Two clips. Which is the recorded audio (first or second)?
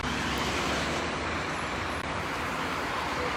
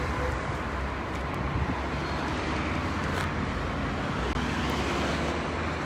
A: second